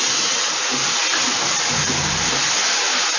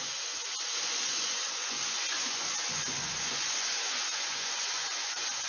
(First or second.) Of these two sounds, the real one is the first